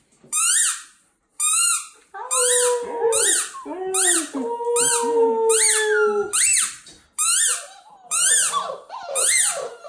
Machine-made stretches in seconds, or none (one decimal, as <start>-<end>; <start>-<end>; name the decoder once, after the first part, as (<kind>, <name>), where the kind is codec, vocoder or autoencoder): 6.5-7.1 (vocoder, BigVGAN v2)